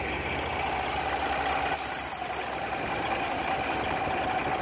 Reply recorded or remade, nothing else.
recorded